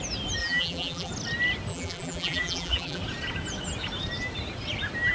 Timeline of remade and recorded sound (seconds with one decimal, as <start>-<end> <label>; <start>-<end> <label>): 0.0-0.4 recorded; 0.4-1.1 remade; 1.1-1.7 recorded; 1.7-3.0 remade; 3.0-5.1 recorded